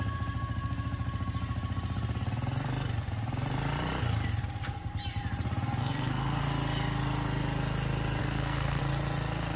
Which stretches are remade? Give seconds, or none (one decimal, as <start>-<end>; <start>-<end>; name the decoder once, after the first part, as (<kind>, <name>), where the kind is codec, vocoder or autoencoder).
5.8-6.4 (codec, SNAC); 8.2-8.8